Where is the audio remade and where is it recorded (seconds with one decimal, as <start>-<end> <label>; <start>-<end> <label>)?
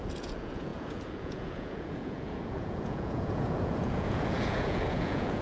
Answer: 0.0-5.4 remade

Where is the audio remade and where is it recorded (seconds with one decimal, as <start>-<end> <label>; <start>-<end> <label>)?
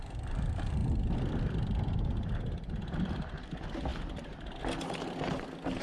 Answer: 0.0-5.8 recorded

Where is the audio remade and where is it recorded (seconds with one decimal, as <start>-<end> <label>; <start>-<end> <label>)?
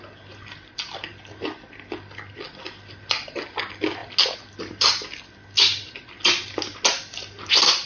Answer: 0.0-7.9 recorded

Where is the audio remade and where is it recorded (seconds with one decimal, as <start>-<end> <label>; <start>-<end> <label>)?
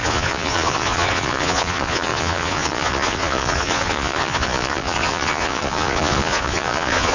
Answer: 0.0-7.1 remade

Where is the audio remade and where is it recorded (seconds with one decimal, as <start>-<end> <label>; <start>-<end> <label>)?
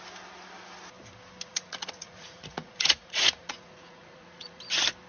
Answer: 0.0-1.5 recorded; 1.5-4.6 remade; 4.6-5.1 recorded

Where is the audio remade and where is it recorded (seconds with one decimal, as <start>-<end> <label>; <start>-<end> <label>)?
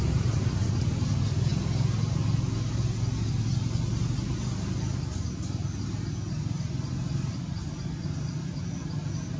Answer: 0.0-9.4 recorded